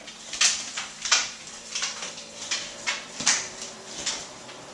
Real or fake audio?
fake